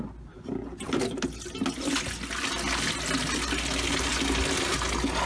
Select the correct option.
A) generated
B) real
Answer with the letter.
B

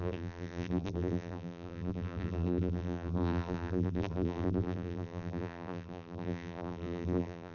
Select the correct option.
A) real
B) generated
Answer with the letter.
B